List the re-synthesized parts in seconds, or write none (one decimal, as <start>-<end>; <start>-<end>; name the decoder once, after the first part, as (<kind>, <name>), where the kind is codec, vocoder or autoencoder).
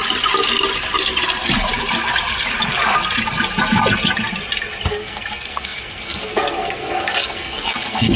4.9-8.2 (codec, SNAC)